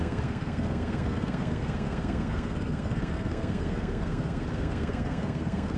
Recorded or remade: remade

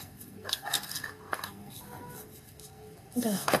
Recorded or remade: remade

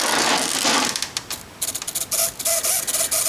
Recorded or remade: recorded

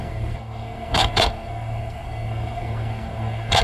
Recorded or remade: remade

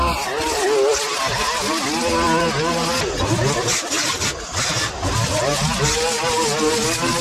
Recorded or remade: recorded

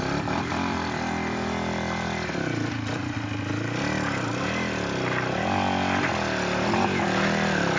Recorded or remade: recorded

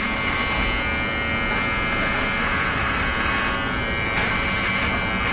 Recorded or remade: recorded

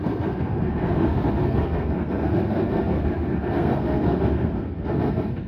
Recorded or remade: remade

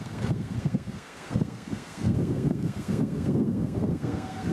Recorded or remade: remade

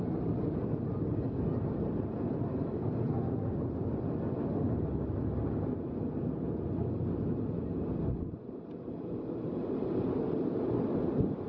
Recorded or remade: recorded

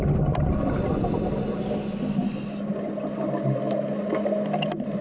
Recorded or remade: recorded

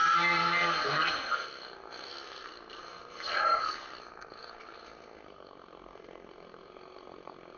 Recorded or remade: remade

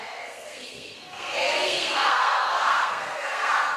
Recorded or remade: remade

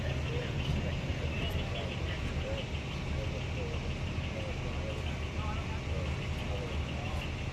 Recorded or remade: recorded